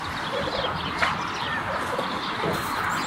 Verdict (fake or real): real